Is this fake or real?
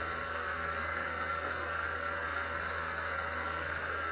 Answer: fake